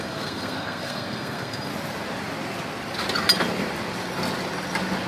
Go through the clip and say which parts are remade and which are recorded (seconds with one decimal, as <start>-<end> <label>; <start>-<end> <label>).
0.0-1.7 remade; 1.7-5.1 recorded